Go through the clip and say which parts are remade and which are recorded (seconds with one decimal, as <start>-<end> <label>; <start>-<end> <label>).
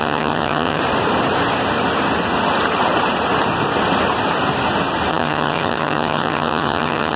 0.0-0.8 remade; 0.8-5.1 recorded; 5.1-7.2 remade